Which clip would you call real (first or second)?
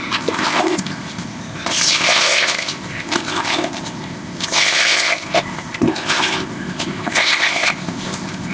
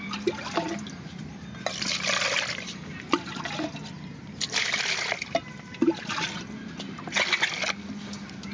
second